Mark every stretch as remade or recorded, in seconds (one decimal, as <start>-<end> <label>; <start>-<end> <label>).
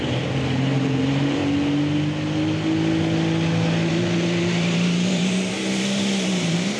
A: 0.0-1.4 remade; 1.4-3.9 recorded; 3.9-6.8 remade